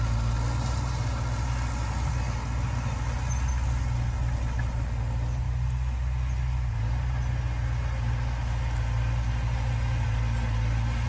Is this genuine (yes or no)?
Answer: yes